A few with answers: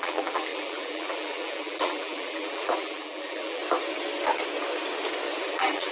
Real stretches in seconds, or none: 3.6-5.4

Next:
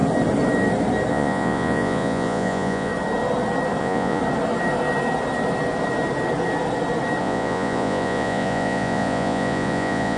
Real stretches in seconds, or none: 0.0-1.1; 2.9-3.8; 4.2-7.2

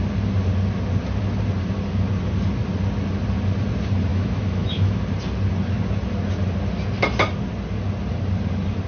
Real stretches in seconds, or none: 0.0-4.1; 5.0-8.9

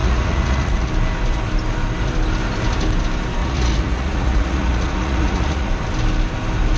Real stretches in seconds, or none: 0.9-3.4; 5.7-6.8

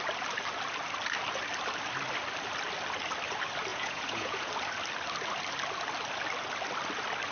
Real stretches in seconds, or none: 0.0-3.7; 4.5-7.3

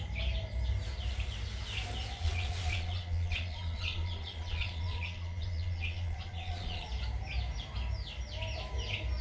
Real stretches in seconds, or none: 0.0-2.2; 6.9-9.2

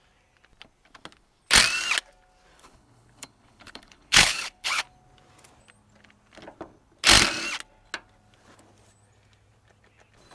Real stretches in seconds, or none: 0.0-2.5; 4.8-10.3

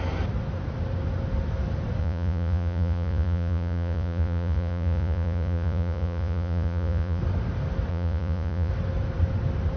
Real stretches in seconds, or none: 0.0-2.0; 7.2-7.9; 8.7-9.8